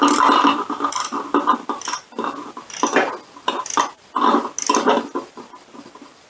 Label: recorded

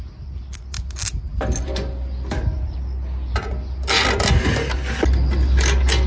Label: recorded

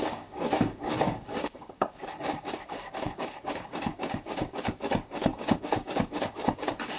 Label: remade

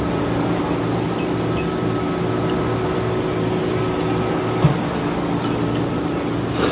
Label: recorded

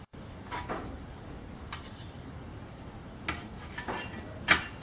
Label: recorded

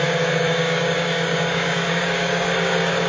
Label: remade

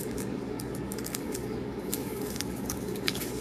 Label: remade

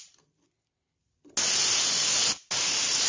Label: recorded